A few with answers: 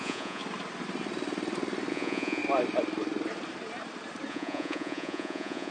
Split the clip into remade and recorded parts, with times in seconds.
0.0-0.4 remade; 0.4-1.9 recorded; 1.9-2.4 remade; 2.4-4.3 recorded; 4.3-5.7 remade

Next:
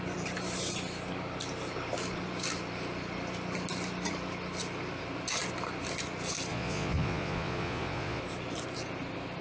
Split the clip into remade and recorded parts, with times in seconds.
0.0-6.5 recorded; 6.5-8.2 remade; 8.2-9.4 recorded

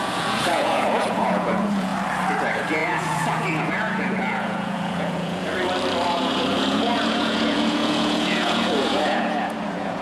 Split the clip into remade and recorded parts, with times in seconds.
0.0-1.9 remade; 1.9-2.4 recorded; 2.4-5.5 remade; 5.5-6.1 recorded; 6.1-10.0 remade

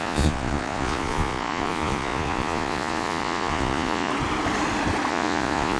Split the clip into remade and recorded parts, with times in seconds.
0.0-4.1 remade; 4.1-5.1 recorded; 5.1-5.8 remade

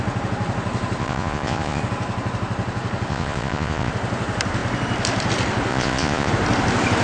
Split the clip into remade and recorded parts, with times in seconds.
0.0-1.0 recorded; 1.0-1.8 remade; 1.8-3.1 recorded; 3.1-3.9 remade; 3.9-5.7 recorded; 5.7-6.3 remade; 6.3-7.0 recorded

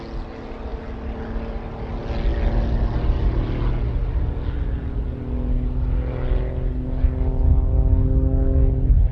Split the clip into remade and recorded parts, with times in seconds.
0.0-9.1 recorded

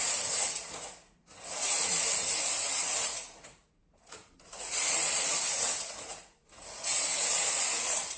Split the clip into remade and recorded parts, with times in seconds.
0.0-8.2 remade